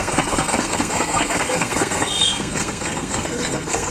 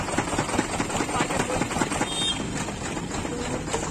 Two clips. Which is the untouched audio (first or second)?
second